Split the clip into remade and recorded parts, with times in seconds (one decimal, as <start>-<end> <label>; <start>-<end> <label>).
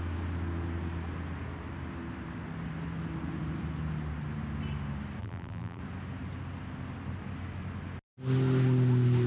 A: 0.0-5.2 recorded; 5.2-5.8 remade; 5.8-9.3 recorded